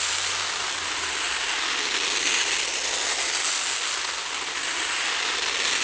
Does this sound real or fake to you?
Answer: real